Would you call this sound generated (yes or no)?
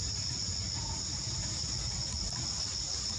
no